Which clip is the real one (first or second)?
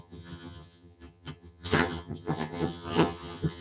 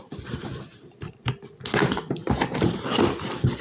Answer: second